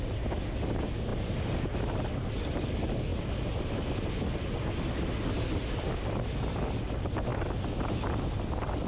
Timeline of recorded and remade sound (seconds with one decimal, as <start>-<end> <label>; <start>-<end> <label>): 0.0-8.9 recorded